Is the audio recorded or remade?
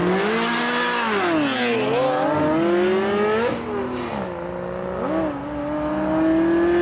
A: recorded